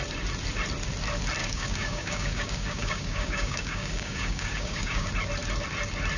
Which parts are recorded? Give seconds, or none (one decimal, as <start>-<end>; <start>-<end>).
0.0-1.4; 5.1-6.2